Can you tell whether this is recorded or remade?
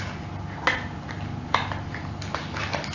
recorded